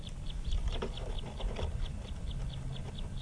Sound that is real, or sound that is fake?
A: real